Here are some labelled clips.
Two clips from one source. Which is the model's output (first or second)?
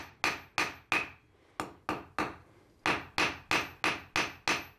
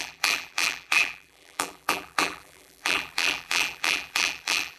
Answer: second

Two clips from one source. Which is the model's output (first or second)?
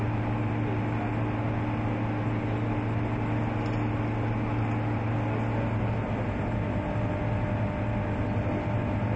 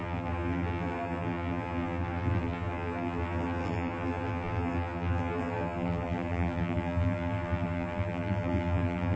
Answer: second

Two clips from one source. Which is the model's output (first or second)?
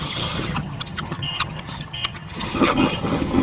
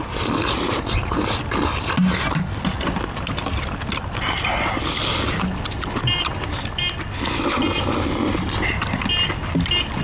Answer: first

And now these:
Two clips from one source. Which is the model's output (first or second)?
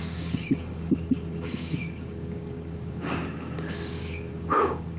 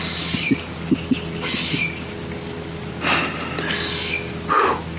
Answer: first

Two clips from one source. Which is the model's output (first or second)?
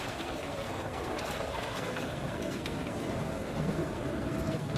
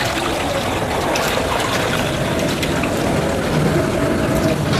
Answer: first